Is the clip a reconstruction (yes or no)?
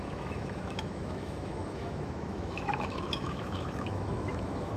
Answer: yes